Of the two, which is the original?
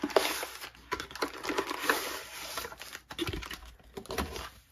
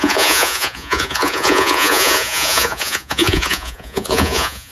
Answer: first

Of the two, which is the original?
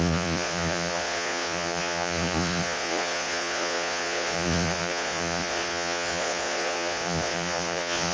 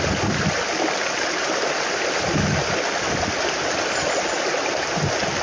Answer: second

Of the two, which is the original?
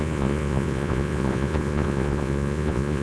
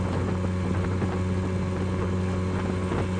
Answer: second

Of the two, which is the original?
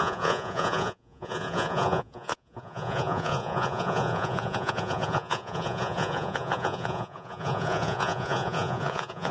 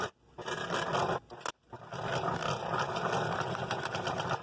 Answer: second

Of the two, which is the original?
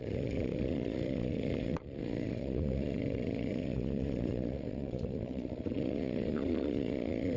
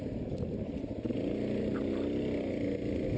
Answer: second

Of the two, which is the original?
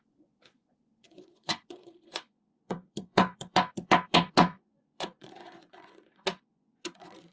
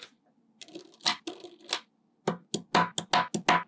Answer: second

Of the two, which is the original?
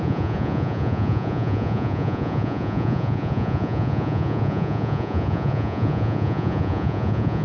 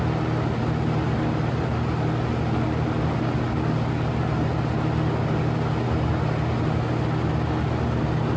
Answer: second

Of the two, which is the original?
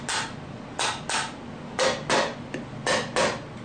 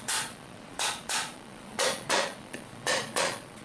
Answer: first